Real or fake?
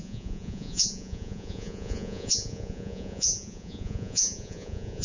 fake